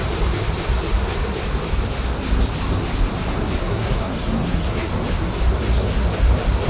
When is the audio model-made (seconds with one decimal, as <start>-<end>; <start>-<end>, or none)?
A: 3.6-4.9